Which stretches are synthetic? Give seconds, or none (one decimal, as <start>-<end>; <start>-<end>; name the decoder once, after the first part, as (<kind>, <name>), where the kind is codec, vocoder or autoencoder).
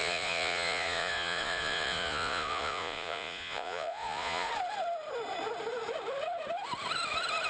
0.0-4.5 (vocoder, Vocos)